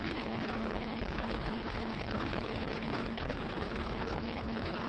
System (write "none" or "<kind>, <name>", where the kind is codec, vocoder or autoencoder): codec, HILCodec